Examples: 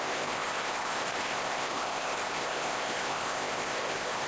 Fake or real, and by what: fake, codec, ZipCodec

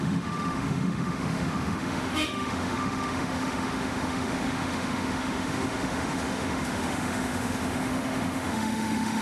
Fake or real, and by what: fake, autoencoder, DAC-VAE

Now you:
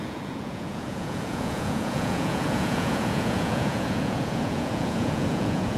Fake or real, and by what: fake, vocoder, Vocos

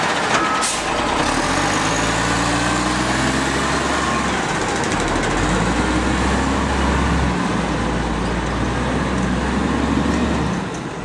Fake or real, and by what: real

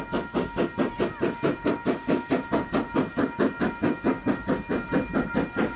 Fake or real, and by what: real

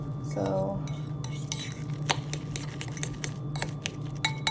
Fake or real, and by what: real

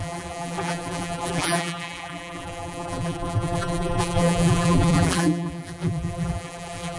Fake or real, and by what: fake, vocoder, BigVGAN v2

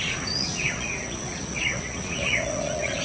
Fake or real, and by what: fake, vocoder, Vocos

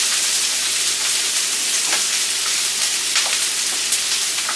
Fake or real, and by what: real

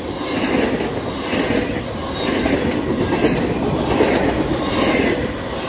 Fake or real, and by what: real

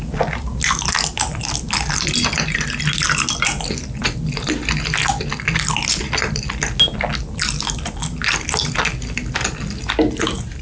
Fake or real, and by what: real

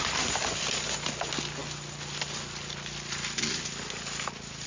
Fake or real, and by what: real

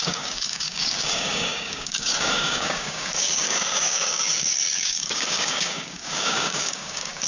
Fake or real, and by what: fake, codec, DAC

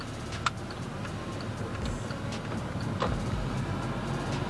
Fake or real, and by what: real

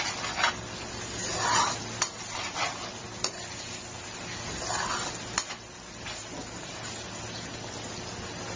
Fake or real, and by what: real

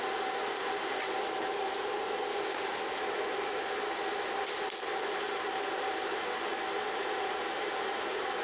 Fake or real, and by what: real